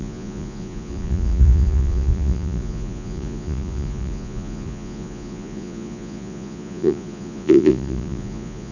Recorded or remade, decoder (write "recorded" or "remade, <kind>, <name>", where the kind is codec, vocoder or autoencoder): remade, vocoder, Vocos